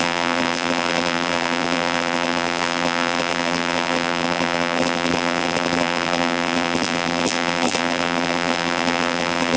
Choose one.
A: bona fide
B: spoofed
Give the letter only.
B